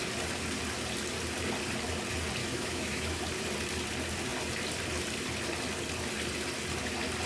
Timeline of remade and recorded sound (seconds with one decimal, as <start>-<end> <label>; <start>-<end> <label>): 0.0-2.4 recorded; 2.4-3.2 remade; 3.2-7.3 recorded